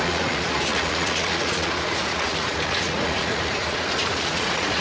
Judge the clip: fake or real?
fake